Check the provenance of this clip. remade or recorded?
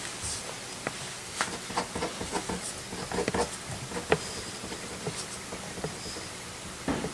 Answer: recorded